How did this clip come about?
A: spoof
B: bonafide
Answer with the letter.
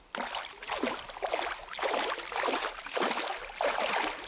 B